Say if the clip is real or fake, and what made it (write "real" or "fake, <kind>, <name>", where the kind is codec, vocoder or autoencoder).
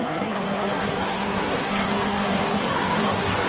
fake, codec, SNAC